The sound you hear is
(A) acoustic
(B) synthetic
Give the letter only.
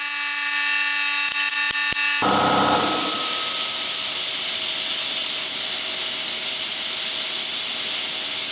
A